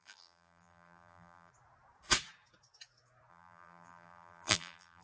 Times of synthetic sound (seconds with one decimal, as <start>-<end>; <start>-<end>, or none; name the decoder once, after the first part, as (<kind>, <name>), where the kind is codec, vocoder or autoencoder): 0.0-1.5 (vocoder, BigVGAN v2); 3.3-5.0